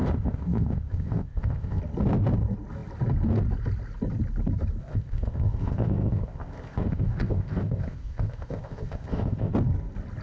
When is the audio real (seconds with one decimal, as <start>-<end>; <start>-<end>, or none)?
1.8-4.8; 9.5-10.2